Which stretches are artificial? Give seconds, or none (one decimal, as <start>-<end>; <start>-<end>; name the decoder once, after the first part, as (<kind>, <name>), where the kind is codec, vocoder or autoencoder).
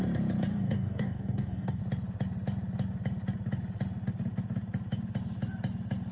0.5-1.8 (codec, DAC)